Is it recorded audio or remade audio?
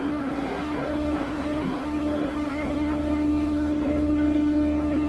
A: remade